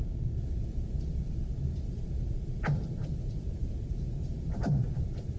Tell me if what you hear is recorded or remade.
remade